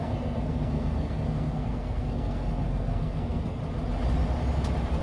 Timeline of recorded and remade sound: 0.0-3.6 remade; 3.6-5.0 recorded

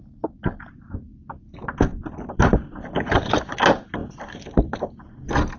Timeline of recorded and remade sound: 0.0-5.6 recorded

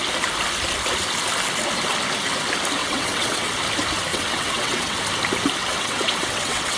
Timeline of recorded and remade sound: 0.0-2.8 recorded; 2.8-3.5 remade; 3.5-4.1 recorded; 4.1-5.0 remade; 5.0-5.6 recorded; 5.6-6.8 remade